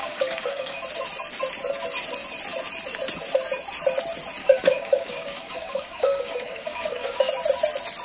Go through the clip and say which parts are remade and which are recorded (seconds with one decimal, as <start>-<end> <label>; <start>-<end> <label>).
0.0-0.8 remade; 0.8-4.4 recorded; 4.4-7.3 remade; 7.3-8.0 recorded